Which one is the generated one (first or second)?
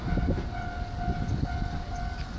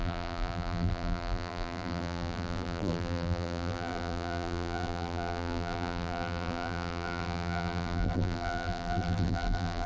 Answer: second